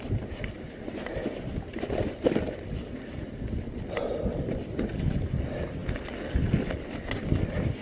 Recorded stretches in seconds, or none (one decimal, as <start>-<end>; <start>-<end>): 0.0-7.8